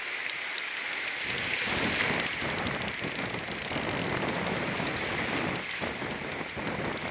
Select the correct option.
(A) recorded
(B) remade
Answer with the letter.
A